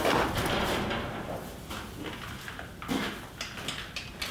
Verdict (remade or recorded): recorded